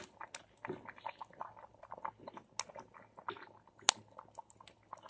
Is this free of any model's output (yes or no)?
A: yes